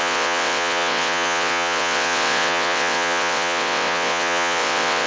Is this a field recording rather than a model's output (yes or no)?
no